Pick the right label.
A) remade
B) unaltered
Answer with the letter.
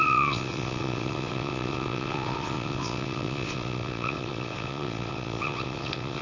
A